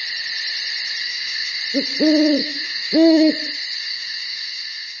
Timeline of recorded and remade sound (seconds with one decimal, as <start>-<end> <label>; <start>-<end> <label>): 0.0-1.0 recorded; 1.0-1.6 remade; 1.6-2.4 recorded; 2.4-3.3 remade; 3.3-3.8 recorded; 3.8-5.0 remade